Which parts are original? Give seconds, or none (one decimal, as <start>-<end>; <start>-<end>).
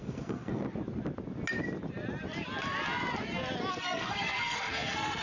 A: 0.6-3.7